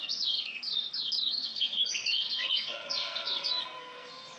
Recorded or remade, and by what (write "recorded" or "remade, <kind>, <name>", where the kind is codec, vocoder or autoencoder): remade, codec, SNAC